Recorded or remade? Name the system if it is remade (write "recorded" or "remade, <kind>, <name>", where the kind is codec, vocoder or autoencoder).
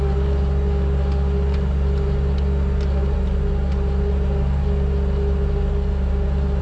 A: recorded